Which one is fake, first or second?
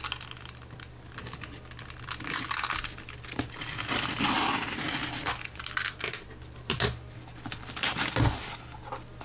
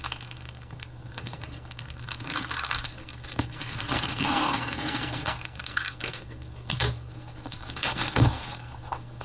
second